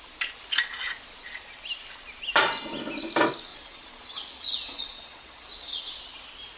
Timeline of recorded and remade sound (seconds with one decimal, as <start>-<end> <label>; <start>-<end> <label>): 0.0-3.5 recorded; 3.5-5.8 remade; 5.8-6.6 recorded

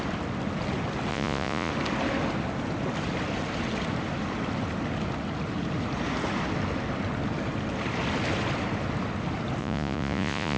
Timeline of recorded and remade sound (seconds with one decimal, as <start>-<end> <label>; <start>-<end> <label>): 0.0-1.1 recorded; 1.1-1.7 remade; 1.7-9.6 recorded; 9.6-10.6 remade

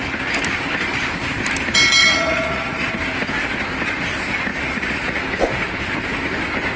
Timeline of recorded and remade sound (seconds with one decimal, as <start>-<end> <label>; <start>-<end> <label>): 0.0-2.0 recorded; 2.0-2.9 remade; 2.9-4.5 recorded; 4.5-5.2 remade; 5.2-6.8 recorded

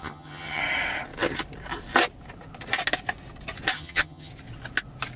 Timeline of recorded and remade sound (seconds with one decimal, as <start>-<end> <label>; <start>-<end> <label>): 0.0-0.6 remade; 0.6-3.7 recorded; 3.7-4.3 remade; 4.3-5.2 recorded

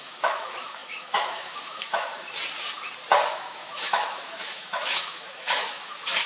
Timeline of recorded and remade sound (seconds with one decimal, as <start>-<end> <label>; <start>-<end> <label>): 0.0-2.1 remade; 2.1-3.3 recorded; 3.3-6.3 remade

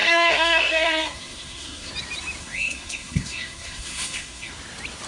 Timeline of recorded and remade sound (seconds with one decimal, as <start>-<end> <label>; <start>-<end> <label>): 0.0-1.9 remade; 1.9-2.4 recorded; 2.4-4.5 remade; 4.5-5.1 recorded

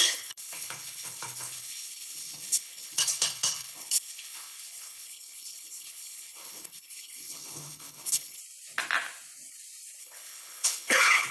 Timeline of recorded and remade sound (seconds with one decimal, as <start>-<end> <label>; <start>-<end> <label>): 0.0-8.4 remade; 8.4-10.0 recorded; 10.0-11.3 remade

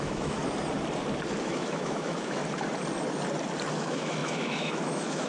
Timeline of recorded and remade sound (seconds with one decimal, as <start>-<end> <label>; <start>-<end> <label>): 0.0-0.4 remade; 0.4-1.4 recorded; 1.4-2.4 remade; 2.4-3.7 recorded; 3.7-5.3 remade